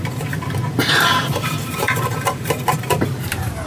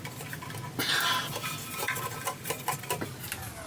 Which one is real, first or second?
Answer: second